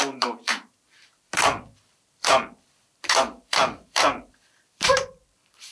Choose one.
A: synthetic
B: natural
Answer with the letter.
A